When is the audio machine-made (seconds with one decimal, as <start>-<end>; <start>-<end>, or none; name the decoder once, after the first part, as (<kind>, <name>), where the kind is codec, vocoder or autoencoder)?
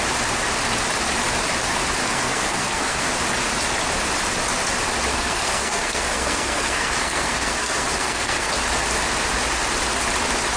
2.0-3.1 (codec, SNAC); 5.1-8.5